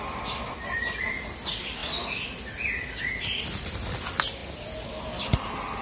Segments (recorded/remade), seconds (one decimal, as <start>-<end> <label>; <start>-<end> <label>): 0.0-5.8 recorded